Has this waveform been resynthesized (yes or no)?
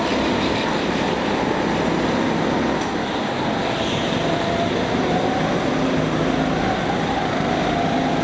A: no